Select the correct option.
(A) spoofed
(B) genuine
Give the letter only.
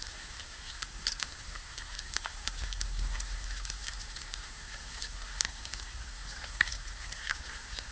A